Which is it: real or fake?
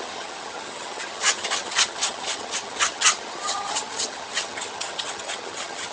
fake